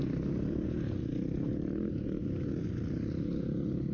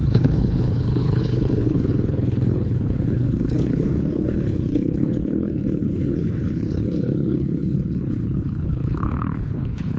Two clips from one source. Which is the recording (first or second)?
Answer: first